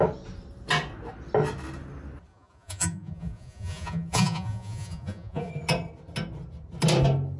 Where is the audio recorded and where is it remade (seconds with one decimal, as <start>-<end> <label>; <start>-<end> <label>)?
0.0-2.3 recorded; 2.3-5.5 remade; 5.5-7.4 recorded